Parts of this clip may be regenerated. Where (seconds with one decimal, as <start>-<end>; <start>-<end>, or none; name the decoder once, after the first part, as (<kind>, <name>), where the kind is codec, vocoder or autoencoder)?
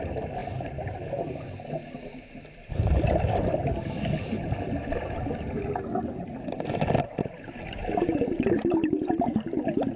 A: 7.8-8.5 (vocoder, BigVGAN v2)